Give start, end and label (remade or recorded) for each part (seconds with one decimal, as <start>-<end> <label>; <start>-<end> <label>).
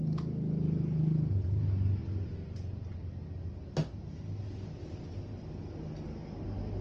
0.0-6.8 recorded